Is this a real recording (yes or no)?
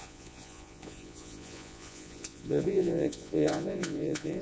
no